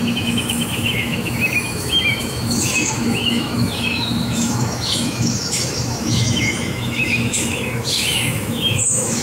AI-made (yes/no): yes